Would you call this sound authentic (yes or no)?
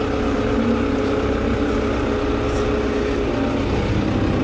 yes